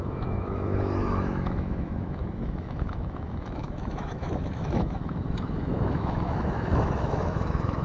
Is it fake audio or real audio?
fake